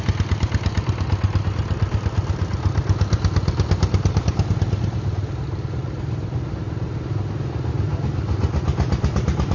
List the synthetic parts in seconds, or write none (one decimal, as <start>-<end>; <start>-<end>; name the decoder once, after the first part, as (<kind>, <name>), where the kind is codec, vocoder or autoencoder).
none